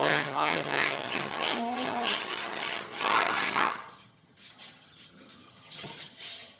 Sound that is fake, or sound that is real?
fake